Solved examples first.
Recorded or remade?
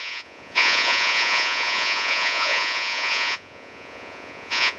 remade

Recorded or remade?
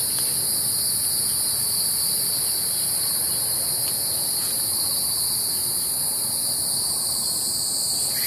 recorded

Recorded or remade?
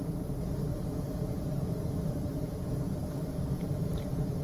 remade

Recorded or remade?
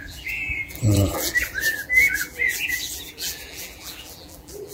remade